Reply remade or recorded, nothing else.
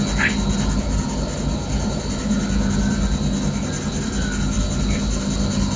recorded